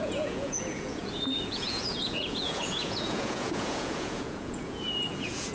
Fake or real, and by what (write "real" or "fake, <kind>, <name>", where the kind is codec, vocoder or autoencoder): fake, vocoder, Vocos